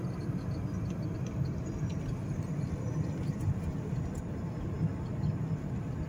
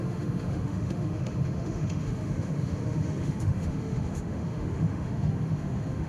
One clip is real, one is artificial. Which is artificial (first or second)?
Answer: second